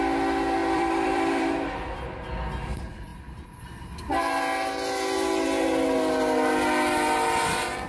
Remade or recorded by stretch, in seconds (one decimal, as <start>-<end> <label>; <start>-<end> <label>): 0.0-0.6 recorded; 0.6-1.7 remade; 1.7-3.1 recorded; 3.1-4.2 remade; 4.2-7.9 recorded